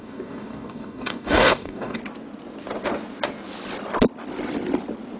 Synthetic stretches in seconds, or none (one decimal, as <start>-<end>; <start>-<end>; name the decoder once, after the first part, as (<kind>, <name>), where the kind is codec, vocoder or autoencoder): 0.0-2.0 (codec, DAC)